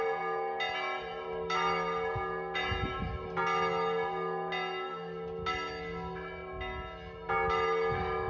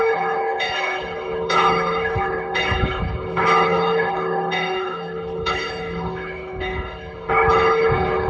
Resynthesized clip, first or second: second